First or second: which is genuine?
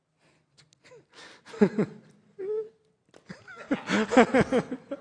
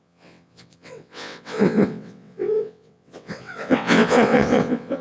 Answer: first